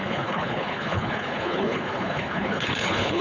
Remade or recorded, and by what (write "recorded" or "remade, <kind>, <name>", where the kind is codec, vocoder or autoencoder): remade, codec, HILCodec